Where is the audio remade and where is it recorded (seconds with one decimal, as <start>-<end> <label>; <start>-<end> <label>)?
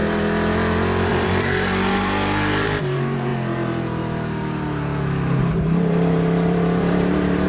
0.0-1.1 recorded; 1.1-3.3 remade; 3.3-5.5 recorded; 5.5-7.5 remade